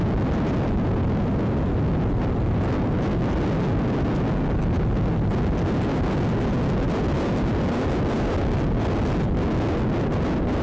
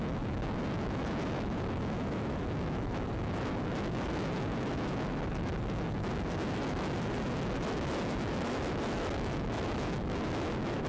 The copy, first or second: second